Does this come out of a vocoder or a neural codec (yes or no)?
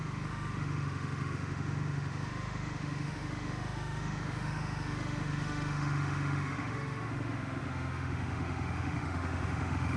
yes